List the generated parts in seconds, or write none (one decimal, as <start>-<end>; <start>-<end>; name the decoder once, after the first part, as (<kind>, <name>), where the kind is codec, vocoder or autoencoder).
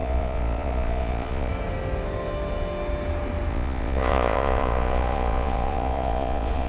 0.0-1.5 (vocoder, Vocos); 3.5-6.7